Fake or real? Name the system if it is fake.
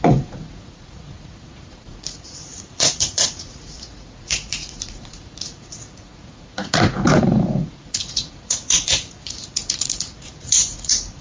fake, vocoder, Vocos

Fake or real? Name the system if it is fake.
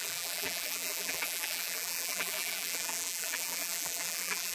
fake, vocoder, BigVGAN v2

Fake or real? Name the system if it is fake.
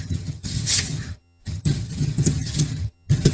fake, vocoder, HiFi-GAN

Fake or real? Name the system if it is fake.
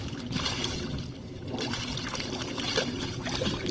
fake, vocoder, BigVGAN v2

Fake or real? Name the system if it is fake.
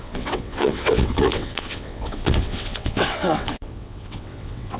fake, vocoder, WaveNeXt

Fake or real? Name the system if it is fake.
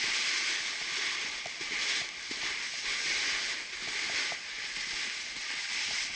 real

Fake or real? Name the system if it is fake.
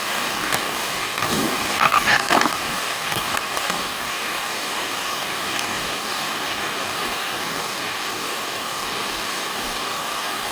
fake, codec, DAC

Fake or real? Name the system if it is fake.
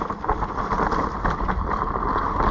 real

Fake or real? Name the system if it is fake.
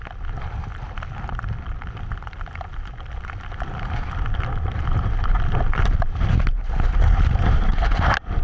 real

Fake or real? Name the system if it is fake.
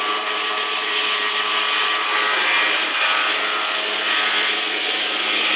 real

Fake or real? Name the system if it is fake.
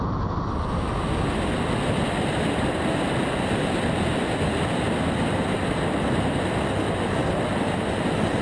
real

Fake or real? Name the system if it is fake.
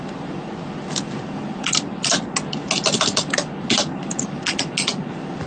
real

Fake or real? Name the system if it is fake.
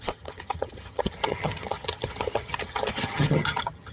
fake, vocoder, HiFi-GAN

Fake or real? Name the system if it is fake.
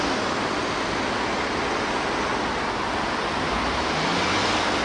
real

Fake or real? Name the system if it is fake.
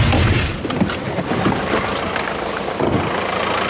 real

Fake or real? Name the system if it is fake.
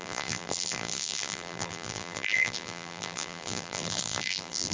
fake, vocoder, BigVGAN v2